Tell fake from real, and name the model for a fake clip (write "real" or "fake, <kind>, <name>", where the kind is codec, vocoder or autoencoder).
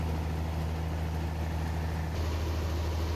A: real